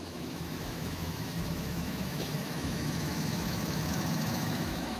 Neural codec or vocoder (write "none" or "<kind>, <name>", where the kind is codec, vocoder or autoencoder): autoencoder, DAC-VAE